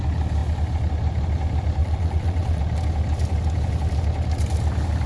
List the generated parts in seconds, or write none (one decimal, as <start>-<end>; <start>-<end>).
1.8-2.6